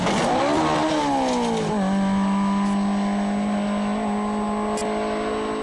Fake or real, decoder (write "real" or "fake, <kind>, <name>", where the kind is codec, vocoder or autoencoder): real